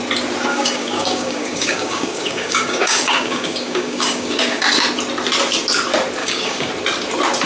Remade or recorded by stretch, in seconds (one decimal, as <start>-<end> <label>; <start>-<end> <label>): 0.0-0.5 recorded; 0.5-4.6 remade; 4.6-6.2 recorded; 6.2-6.7 remade; 6.7-7.5 recorded